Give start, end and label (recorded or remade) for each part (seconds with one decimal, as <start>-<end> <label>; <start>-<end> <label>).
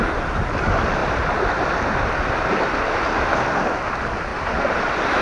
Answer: 0.0-5.2 recorded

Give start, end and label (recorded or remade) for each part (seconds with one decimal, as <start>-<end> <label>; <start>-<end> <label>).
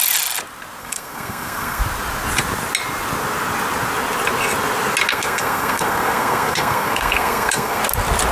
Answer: 0.0-0.8 recorded; 0.8-1.8 remade; 1.8-5.1 recorded; 5.1-7.8 remade; 7.8-8.3 recorded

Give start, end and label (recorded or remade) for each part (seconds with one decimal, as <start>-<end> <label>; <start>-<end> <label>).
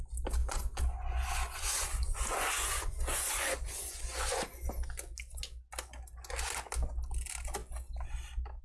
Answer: 0.0-0.4 recorded; 0.4-4.7 remade; 4.7-8.6 recorded